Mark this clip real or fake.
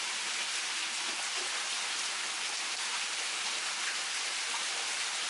real